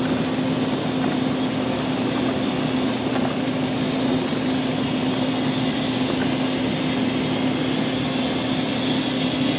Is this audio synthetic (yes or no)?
no